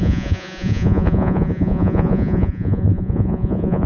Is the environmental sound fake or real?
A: fake